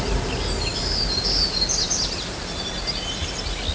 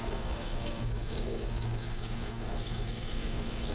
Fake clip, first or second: second